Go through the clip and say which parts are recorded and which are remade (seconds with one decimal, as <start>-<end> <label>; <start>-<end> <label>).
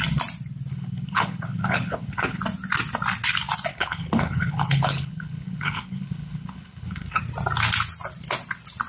0.0-0.7 recorded; 0.7-2.4 remade; 2.4-3.7 recorded; 3.7-7.2 remade; 7.2-8.9 recorded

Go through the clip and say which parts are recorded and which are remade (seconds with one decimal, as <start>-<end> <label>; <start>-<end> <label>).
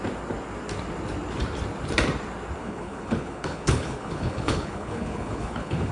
0.0-2.6 recorded; 2.6-5.9 remade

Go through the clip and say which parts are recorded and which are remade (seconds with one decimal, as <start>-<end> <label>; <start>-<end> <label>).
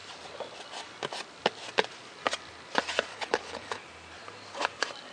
0.0-3.1 recorded; 3.1-3.8 remade; 3.8-5.1 recorded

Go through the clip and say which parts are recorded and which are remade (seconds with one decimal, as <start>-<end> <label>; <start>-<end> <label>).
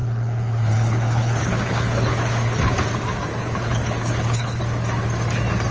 0.0-2.7 remade; 2.7-3.3 recorded; 3.3-4.6 remade; 4.6-5.7 recorded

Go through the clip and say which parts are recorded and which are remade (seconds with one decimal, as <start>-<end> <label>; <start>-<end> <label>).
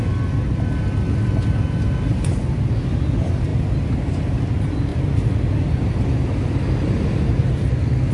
0.0-8.1 recorded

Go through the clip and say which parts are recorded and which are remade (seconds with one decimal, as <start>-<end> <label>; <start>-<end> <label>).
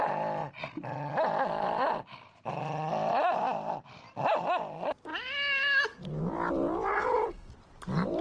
0.0-6.9 recorded; 6.9-7.5 remade; 7.5-8.2 recorded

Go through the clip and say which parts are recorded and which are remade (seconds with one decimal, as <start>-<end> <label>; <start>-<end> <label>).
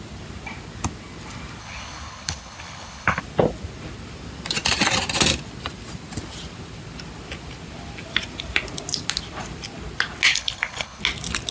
0.0-1.6 recorded; 1.6-3.2 remade; 3.2-10.3 recorded; 10.3-11.0 remade; 11.0-11.5 recorded